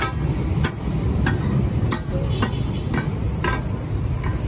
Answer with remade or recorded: recorded